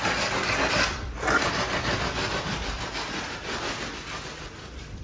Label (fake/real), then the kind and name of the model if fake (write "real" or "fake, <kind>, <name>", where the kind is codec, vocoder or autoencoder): real